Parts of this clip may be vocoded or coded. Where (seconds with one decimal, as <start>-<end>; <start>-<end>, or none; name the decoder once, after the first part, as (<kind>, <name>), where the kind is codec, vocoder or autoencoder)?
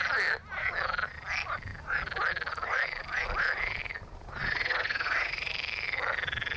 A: 4.4-5.5 (vocoder, Vocos)